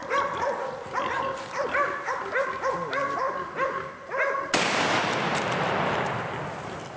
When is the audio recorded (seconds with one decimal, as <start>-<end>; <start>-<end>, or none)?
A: 0.0-7.0